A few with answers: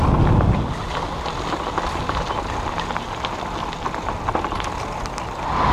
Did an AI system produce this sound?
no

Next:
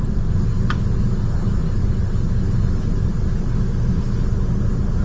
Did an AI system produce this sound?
no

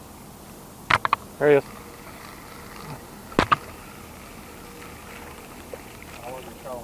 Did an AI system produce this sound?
no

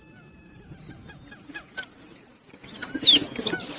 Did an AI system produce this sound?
no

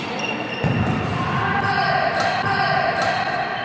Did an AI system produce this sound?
yes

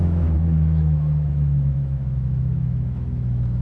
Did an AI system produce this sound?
yes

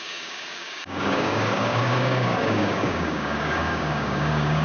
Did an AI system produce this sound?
yes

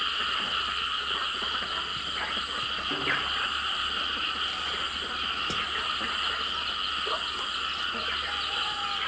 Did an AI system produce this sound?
no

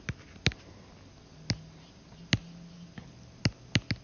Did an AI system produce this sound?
no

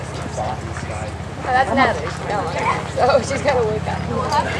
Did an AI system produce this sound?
no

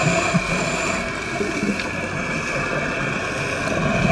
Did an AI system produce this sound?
no